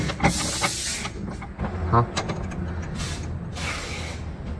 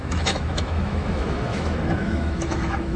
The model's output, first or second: second